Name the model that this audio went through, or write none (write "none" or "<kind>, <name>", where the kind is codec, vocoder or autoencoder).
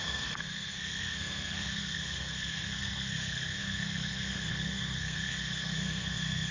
codec, SNAC